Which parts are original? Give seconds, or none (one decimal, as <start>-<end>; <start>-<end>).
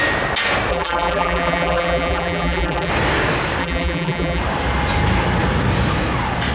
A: 0.0-0.7; 2.9-3.6; 4.4-6.5